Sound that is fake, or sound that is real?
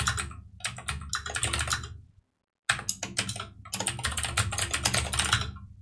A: real